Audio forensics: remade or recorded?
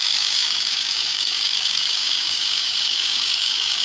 remade